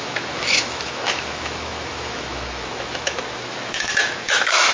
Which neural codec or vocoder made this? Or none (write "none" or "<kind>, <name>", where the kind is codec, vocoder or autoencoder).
autoencoder, DAC-VAE